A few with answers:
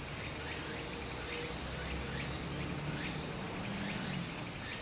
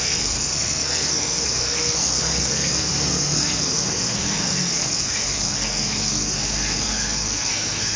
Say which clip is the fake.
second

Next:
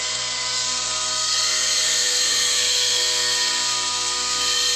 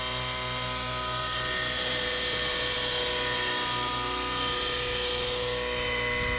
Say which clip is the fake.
first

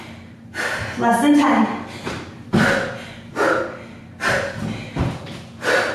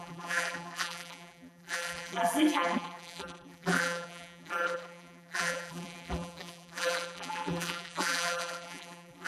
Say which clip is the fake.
second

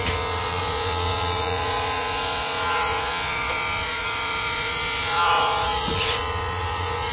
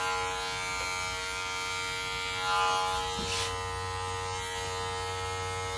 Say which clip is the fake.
first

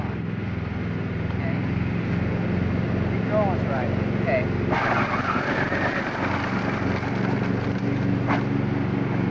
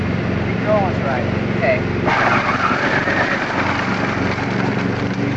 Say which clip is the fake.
second